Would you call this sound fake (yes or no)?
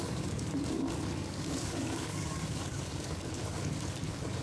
yes